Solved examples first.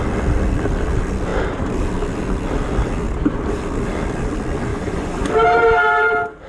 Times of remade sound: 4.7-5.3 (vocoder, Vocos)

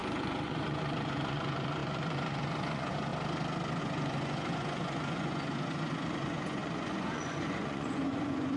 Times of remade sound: 0.0-3.1 (vocoder, Vocos); 3.8-8.6

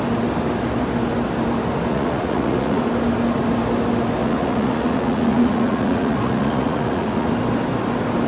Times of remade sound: 1.9-2.8 (vocoder, Vocos); 4.2-7.3